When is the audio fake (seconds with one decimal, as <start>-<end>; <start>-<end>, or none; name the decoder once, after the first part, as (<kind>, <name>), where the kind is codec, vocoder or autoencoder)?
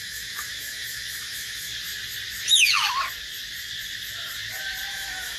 0.0-1.7 (autoencoder, DAC-VAE); 4.9-5.4